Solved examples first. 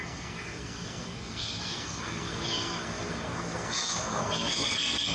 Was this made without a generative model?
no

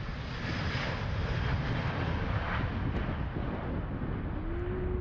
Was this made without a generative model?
yes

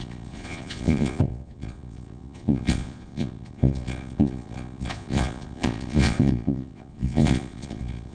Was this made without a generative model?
no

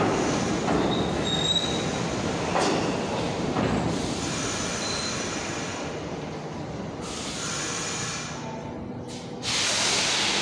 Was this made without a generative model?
yes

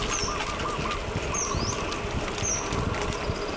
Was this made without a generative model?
yes